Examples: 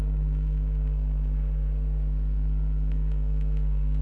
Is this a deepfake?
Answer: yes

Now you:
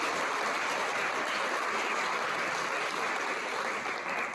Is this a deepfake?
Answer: no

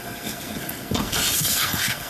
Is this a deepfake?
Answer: yes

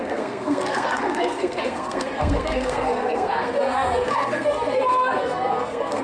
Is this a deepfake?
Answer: yes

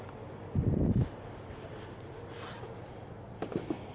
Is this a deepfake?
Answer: no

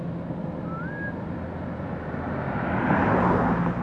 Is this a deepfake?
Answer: no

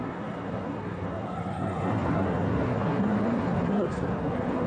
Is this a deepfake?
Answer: yes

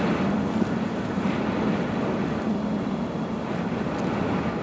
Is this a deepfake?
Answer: no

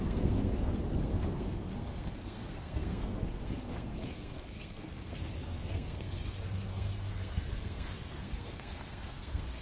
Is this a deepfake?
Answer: yes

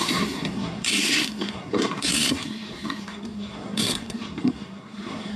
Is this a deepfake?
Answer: yes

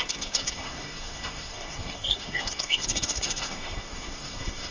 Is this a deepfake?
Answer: yes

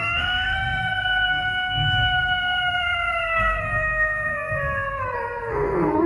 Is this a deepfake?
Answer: yes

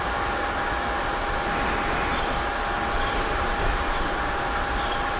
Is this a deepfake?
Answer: no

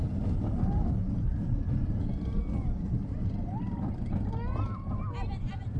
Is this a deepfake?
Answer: no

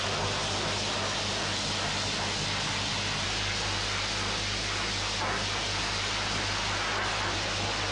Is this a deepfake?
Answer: no